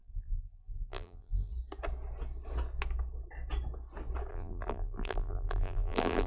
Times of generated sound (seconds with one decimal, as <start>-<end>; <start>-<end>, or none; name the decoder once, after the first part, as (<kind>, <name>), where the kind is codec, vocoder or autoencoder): 0.0-1.5 (vocoder, BigVGAN v2); 4.3-6.3